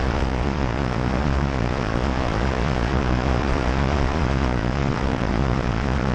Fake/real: fake